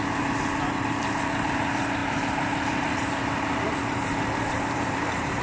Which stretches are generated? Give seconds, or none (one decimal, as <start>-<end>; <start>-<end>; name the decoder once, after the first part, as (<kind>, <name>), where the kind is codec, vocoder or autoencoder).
2.0-5.4 (vocoder, BigVGAN v2)